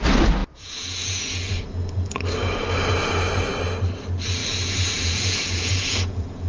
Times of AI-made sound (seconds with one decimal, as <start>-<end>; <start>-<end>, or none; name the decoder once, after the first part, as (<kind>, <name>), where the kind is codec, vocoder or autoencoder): 0.4-1.5 (vocoder, Vocos); 4.4-6.5